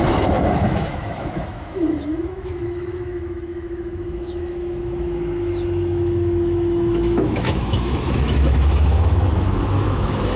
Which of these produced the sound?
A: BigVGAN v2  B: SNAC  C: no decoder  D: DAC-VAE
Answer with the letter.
D